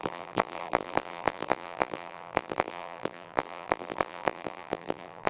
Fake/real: fake